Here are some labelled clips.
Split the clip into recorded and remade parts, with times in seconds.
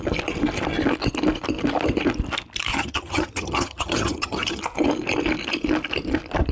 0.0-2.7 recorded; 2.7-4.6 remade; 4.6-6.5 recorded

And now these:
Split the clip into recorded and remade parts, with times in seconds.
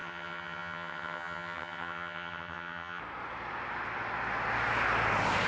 0.0-3.0 remade; 3.0-5.5 recorded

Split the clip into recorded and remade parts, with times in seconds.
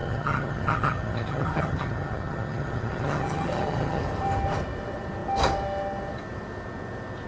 0.0-4.0 remade; 4.0-7.3 recorded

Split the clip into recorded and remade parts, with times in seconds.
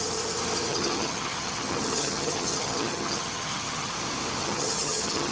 0.0-0.7 recorded; 0.7-3.9 remade; 3.9-4.4 recorded; 4.4-5.3 remade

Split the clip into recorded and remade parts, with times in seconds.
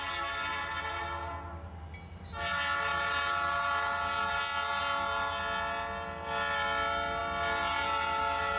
0.0-8.6 recorded